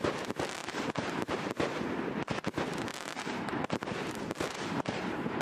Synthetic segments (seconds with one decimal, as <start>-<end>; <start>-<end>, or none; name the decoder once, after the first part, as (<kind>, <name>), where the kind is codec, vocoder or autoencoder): 0.6-1.3 (vocoder, BigVGAN v2); 2.9-5.4